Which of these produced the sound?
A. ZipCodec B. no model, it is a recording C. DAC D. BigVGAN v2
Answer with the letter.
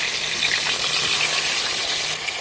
B